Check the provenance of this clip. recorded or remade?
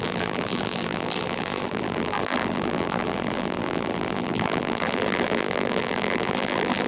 remade